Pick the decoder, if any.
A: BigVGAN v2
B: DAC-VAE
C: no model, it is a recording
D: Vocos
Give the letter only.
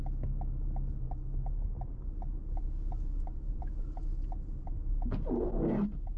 C